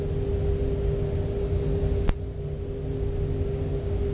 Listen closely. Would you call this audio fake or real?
real